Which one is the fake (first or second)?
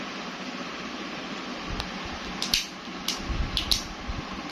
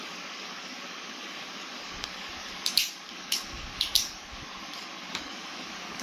second